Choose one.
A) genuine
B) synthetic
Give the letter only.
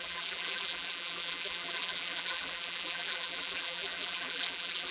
B